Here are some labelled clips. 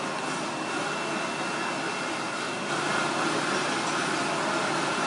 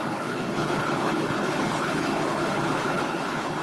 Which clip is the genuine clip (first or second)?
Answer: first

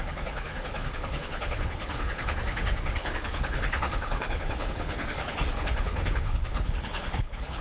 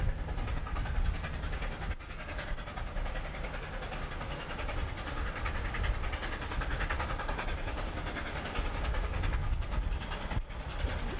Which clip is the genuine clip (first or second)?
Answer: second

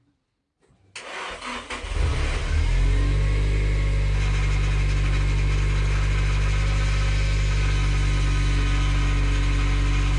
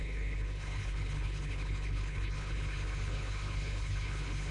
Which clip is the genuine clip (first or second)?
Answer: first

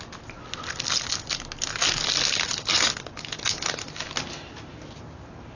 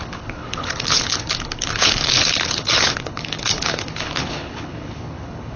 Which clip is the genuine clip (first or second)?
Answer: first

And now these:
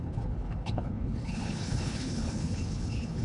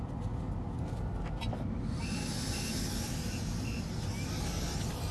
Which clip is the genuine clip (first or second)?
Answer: second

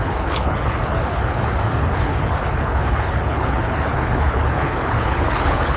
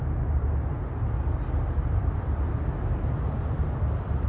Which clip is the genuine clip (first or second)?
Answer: second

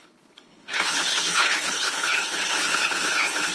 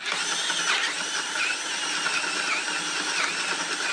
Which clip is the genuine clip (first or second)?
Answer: second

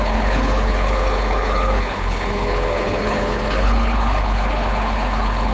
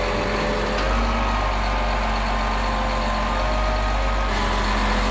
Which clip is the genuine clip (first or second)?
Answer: second